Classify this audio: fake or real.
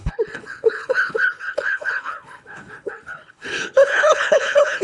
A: fake